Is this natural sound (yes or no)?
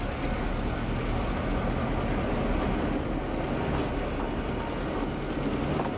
yes